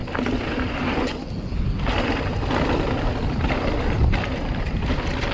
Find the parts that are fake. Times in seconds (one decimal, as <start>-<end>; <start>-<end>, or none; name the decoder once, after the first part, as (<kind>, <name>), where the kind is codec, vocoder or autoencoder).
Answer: none